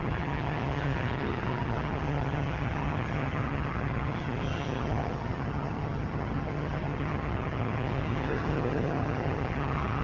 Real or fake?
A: fake